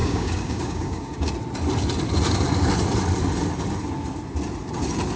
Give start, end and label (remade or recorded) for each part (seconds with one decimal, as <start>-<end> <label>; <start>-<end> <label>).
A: 0.0-1.3 remade; 1.3-5.2 recorded